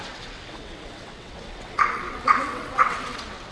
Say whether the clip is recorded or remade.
remade